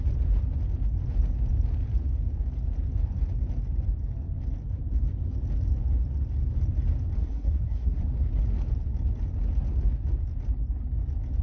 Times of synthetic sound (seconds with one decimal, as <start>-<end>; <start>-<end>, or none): 7.2-8.0